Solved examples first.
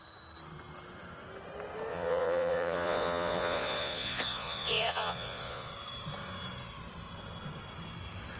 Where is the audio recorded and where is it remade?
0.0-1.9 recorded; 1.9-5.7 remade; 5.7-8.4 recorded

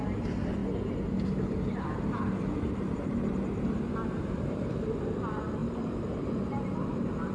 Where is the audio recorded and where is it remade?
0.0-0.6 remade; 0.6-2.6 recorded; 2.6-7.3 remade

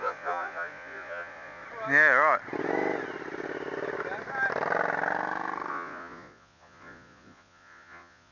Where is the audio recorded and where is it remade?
0.0-1.6 remade; 1.6-5.7 recorded; 5.7-8.3 remade

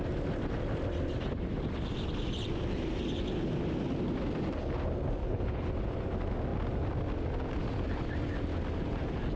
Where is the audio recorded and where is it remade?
0.0-5.2 recorded; 5.2-5.7 remade; 5.7-9.4 recorded

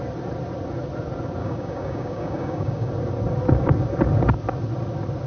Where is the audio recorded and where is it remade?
0.0-1.4 recorded; 1.4-2.9 remade; 2.9-5.3 recorded

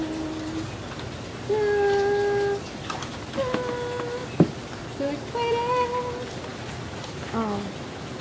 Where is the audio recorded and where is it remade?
0.0-8.2 recorded

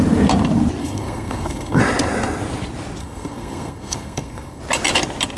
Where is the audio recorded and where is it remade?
0.0-0.8 recorded; 0.8-1.8 remade; 1.8-3.0 recorded; 3.0-4.6 remade; 4.6-5.4 recorded

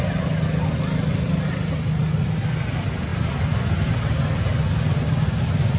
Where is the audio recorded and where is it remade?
0.0-5.8 recorded